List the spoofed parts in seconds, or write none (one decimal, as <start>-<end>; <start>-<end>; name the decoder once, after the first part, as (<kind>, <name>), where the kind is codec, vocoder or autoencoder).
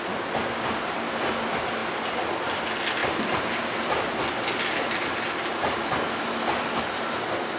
none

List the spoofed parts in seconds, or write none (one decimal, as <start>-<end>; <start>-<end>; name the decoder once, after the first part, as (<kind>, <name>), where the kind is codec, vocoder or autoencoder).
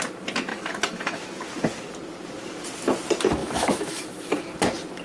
0.5-1.2 (autoencoder, DAC-VAE); 3.4-4.3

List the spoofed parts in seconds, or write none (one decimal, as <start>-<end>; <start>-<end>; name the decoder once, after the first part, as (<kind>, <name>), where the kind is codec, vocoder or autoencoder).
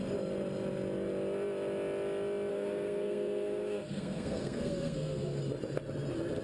2.5-5.4 (codec, SNAC)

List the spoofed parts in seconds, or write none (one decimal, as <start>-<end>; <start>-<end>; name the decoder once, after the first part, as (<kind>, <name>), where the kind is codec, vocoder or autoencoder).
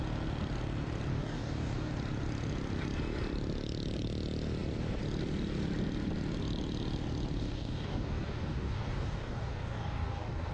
1.1-1.9 (codec, DAC); 7.4-10.5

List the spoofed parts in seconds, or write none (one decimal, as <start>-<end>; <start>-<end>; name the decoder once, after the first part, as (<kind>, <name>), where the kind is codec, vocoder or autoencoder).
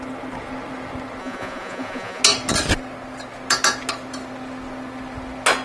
1.2-2.2 (vocoder, Vocos)